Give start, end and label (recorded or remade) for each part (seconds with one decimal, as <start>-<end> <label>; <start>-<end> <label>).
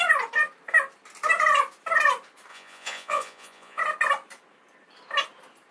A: 0.0-2.5 recorded; 2.5-3.8 remade; 3.8-5.7 recorded